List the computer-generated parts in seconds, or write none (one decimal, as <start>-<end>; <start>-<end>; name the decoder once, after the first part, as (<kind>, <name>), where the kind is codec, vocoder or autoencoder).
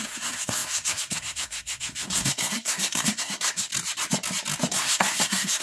0.0-3.7 (codec, SNAC); 4.7-5.6